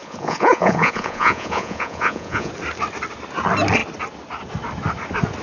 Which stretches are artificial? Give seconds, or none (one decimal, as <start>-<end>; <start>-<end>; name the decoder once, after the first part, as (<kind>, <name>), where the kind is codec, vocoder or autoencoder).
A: 0.0-2.5 (vocoder, Vocos)